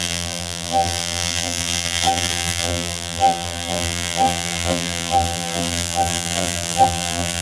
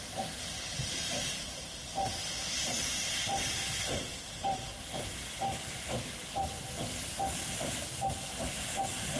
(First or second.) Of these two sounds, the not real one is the first